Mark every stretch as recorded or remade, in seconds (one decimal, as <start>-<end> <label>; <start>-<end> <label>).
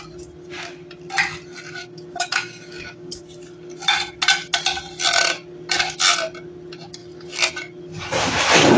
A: 0.0-1.8 recorded; 1.8-3.2 remade; 3.2-8.8 recorded